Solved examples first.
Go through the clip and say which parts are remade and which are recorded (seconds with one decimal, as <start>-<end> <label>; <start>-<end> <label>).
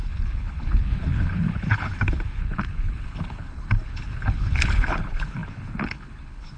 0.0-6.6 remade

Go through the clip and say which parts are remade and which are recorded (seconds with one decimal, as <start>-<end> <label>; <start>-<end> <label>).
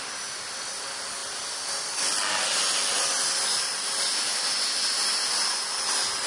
0.0-6.3 recorded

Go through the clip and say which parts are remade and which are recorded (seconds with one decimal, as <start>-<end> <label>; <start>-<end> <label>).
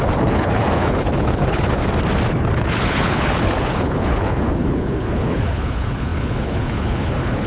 0.0-1.8 remade; 1.8-2.3 recorded; 2.3-7.5 remade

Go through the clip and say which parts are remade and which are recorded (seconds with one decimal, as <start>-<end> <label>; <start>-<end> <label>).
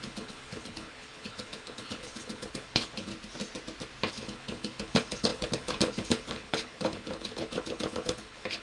0.0-3.1 remade; 3.1-4.1 recorded; 4.1-8.6 remade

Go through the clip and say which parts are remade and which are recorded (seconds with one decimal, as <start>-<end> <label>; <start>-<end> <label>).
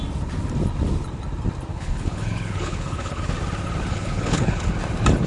0.0-1.7 recorded; 1.7-3.2 remade; 3.2-3.9 recorded; 3.9-4.7 remade; 4.7-5.3 recorded